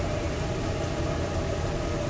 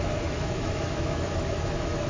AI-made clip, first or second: second